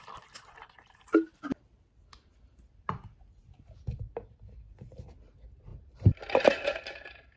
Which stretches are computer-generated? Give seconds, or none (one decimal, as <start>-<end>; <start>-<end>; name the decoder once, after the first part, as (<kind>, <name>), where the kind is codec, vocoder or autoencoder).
5.7-7.4 (vocoder, BigVGAN v2)